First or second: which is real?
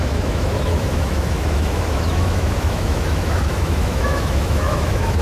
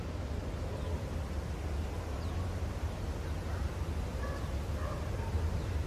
second